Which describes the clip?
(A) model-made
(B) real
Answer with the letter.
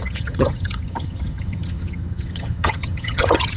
A